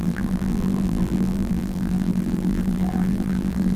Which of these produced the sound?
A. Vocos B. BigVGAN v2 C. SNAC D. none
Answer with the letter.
B